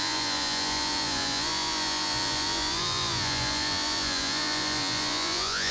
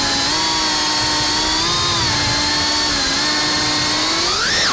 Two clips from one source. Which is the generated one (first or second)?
first